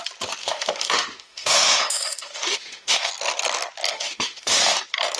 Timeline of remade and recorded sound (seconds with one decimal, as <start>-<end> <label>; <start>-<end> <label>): 0.0-0.4 recorded; 0.4-3.1 remade; 3.1-3.9 recorded; 3.9-4.8 remade; 4.8-5.2 recorded